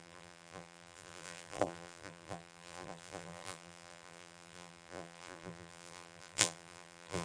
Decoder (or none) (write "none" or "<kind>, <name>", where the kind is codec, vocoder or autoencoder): vocoder, BigVGAN v2